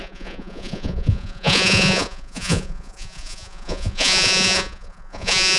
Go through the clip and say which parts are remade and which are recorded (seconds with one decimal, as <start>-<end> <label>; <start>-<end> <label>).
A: 0.0-5.6 remade